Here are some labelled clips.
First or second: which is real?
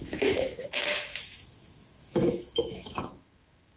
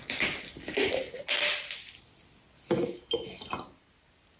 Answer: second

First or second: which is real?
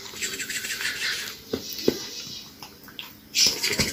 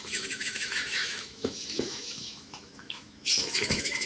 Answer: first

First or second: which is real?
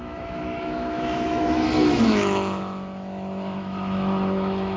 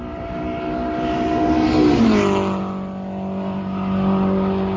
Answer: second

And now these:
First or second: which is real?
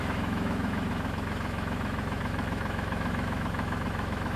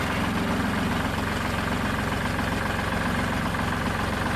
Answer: second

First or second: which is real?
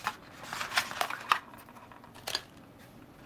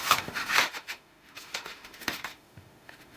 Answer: first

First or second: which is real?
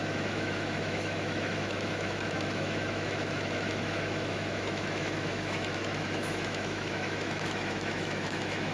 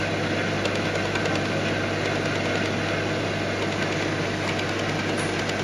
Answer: second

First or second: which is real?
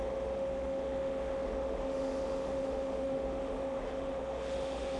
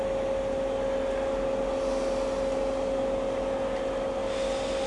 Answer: second